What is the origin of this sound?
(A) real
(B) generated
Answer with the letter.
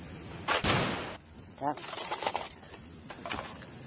A